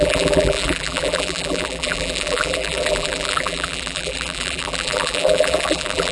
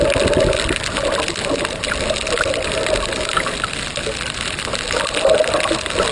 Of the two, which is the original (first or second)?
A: second